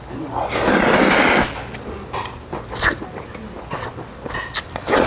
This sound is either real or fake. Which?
real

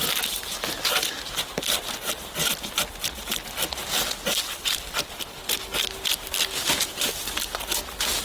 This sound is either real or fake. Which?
real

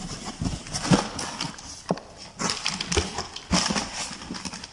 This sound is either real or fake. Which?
fake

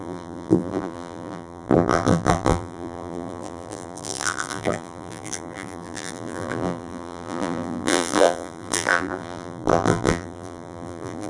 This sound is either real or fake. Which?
fake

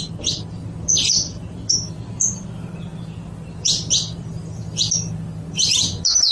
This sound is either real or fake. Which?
fake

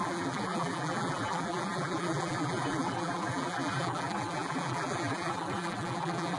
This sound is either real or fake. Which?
fake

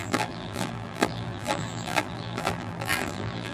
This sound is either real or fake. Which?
fake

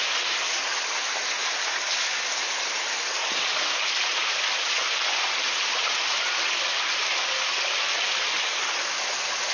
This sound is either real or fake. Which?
real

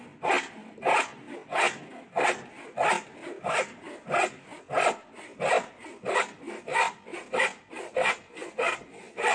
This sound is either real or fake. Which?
real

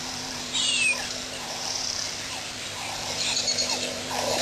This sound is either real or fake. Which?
fake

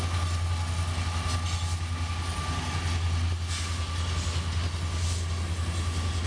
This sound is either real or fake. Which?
real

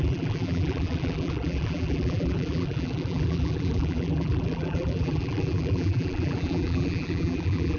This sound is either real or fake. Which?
fake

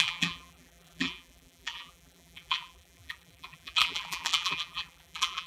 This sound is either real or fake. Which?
fake